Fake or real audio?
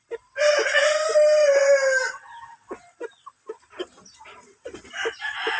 real